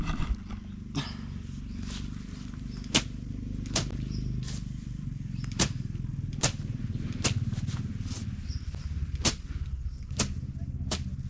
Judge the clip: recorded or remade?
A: recorded